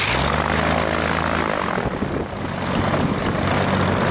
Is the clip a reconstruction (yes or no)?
no